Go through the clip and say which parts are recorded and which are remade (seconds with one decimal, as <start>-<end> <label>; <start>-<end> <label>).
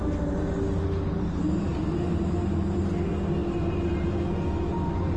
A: 0.0-5.2 recorded